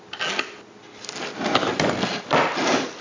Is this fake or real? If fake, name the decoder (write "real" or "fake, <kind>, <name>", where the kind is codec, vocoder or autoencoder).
real